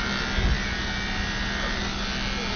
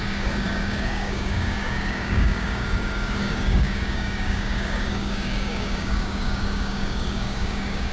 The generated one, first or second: second